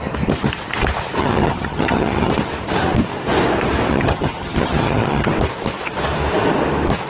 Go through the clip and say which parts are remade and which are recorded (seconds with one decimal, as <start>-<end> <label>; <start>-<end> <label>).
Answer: 0.0-1.2 recorded; 1.2-2.3 remade; 2.3-3.9 recorded; 3.9-5.3 remade; 5.3-7.1 recorded